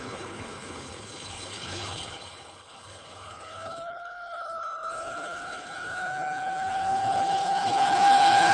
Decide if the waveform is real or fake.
fake